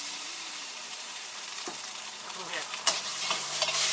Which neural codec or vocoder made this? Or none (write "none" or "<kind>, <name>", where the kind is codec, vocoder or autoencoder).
vocoder, BigVGAN v2